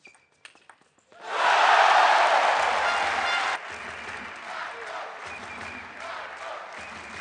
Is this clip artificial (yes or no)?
no